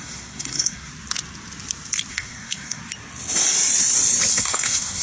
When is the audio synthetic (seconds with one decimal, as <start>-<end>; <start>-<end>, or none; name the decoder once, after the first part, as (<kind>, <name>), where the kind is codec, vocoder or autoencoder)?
0.0-0.9 (codec, SNAC); 2.1-2.8; 4.3-5.0